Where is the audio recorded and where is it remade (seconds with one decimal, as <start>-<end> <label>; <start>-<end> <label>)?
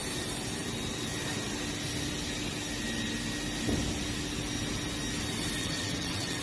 0.0-5.6 recorded; 5.6-6.4 remade